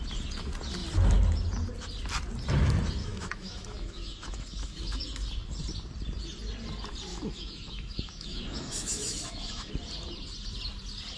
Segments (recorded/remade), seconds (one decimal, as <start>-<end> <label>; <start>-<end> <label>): 0.0-3.0 recorded; 3.0-5.0 remade; 5.0-7.1 recorded; 7.1-9.7 remade; 9.7-11.2 recorded